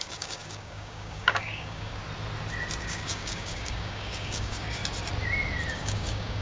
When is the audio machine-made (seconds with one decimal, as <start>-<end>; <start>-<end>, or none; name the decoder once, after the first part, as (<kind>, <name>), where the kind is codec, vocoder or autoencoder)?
0.0-2.0 (codec, DAC); 2.8-4.8; 5.7-6.4